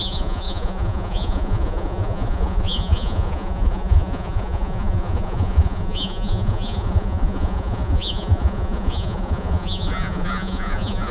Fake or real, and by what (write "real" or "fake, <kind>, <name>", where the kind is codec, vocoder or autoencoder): fake, vocoder, Vocos